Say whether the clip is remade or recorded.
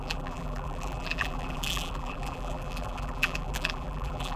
remade